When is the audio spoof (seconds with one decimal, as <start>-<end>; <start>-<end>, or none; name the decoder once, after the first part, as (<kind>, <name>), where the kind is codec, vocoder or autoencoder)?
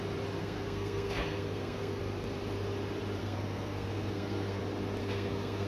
0.4-2.0 (codec, SNAC); 3.2-4.6; 5.0-5.7